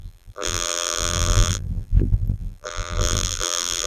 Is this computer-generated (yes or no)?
yes